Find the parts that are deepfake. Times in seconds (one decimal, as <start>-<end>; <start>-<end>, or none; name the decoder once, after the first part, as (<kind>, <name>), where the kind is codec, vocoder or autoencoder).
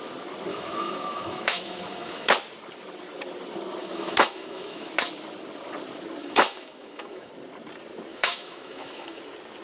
0.5-2.3 (autoencoder, DAC-VAE); 3.8-4.9; 6.2-7.3; 8.1-9.2